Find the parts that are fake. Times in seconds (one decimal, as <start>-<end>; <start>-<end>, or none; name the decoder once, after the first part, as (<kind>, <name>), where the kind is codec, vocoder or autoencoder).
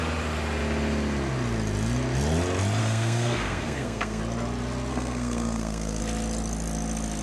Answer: 2.8-4.2 (codec, SNAC); 4.9-6.0